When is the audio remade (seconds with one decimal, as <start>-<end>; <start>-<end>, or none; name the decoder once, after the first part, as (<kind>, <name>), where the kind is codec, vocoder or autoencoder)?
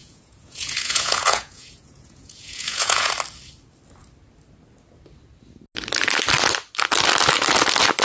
0.0-3.1 (vocoder, Vocos)